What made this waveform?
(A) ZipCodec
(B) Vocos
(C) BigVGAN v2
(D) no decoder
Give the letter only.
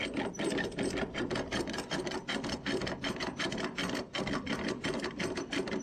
D